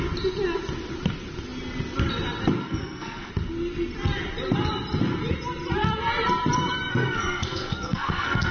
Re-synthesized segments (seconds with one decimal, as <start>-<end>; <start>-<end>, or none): 2.6-3.3; 6.9-8.5